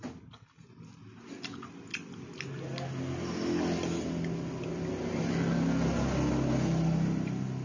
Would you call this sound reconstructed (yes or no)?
no